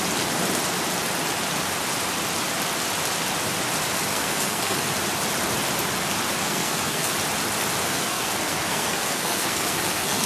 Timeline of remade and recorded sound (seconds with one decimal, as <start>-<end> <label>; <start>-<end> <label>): 0.0-4.1 recorded; 4.1-4.8 remade; 4.8-6.4 recorded; 6.4-7.1 remade; 7.1-7.8 recorded; 7.8-10.3 remade